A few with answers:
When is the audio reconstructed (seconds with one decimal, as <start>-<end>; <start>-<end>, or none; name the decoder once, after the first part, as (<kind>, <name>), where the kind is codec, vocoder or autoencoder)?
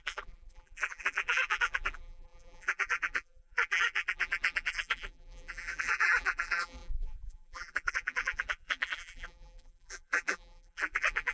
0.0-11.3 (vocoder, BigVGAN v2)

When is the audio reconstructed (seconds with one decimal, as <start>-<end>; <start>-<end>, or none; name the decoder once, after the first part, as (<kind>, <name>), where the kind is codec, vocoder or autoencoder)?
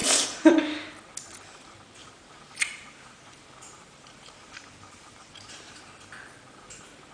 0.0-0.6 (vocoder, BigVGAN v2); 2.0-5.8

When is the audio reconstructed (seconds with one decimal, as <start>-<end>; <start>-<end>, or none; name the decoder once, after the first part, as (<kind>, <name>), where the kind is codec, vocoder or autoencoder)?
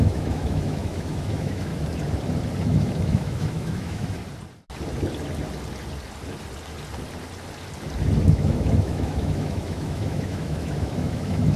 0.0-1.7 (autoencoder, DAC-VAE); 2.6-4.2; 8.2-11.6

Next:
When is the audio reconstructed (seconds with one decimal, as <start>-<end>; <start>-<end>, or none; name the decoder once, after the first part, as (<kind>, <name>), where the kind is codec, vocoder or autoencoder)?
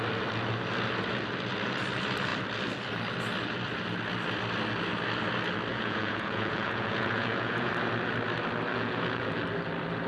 5.7-7.7 (vocoder, Vocos); 8.7-9.4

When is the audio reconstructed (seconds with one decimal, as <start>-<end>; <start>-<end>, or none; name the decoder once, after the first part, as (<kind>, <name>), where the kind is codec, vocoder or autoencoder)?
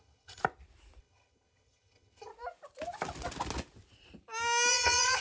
0.0-0.4 (vocoder, HiFi-GAN); 1.0-2.3; 4.7-5.2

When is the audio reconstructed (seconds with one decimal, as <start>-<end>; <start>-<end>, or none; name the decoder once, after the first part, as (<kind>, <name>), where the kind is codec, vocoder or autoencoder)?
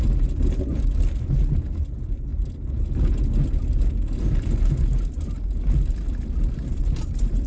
none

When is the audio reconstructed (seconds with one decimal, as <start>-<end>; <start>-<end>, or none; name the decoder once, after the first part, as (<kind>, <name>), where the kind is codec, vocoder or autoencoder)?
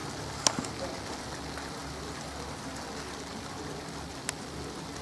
none